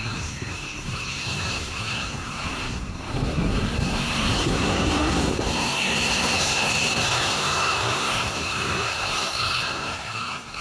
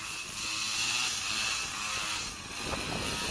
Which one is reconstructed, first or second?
first